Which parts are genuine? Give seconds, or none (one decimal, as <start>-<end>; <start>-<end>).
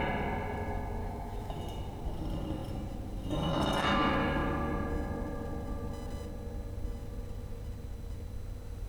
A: 0.0-1.0; 1.6-8.9